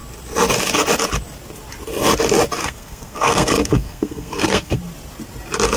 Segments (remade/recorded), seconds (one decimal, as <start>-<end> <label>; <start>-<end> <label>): 0.0-2.6 recorded; 2.6-4.8 remade; 4.8-5.8 recorded